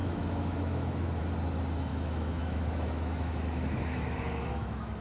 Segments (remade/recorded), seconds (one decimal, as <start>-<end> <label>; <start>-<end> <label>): 0.0-1.2 remade; 1.2-1.9 recorded; 1.9-5.0 remade

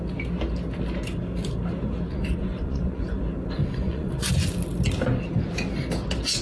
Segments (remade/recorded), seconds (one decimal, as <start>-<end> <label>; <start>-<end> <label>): 0.0-2.1 recorded; 2.1-3.2 remade; 3.2-3.6 recorded; 3.6-4.3 remade; 4.3-6.4 recorded